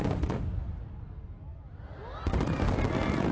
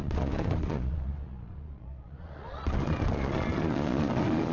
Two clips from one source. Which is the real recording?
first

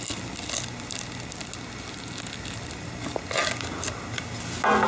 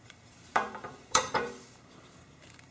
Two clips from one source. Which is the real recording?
first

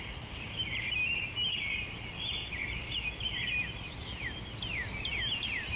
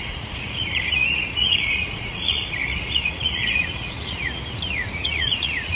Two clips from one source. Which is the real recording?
first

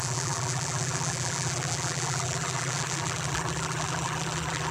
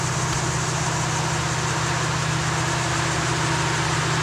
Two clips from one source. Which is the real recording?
second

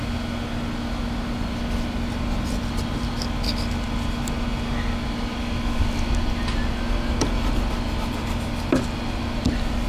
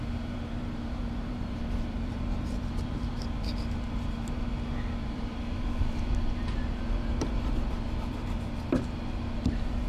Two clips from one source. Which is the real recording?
first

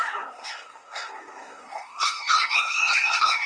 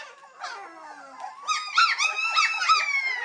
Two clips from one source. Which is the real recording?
second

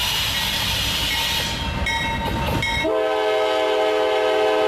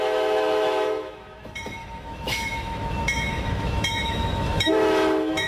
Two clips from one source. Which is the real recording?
first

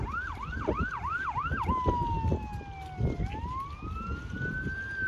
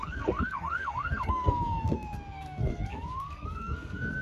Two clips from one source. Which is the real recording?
first